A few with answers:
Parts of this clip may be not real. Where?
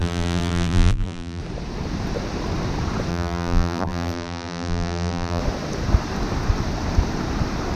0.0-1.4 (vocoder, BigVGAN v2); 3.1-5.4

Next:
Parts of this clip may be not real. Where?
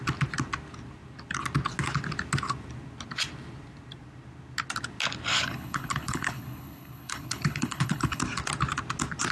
5.3-8.2 (codec, HILCodec)